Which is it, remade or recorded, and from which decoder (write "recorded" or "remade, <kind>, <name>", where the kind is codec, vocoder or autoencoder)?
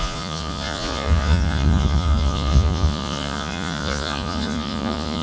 remade, vocoder, Vocos